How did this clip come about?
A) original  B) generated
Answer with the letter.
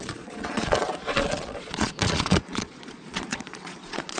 B